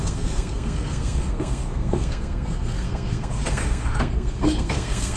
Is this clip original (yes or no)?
no